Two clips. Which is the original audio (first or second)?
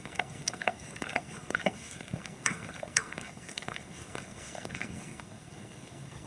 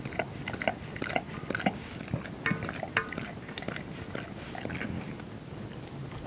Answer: second